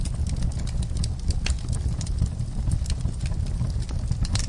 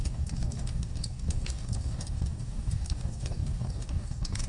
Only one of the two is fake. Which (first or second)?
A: second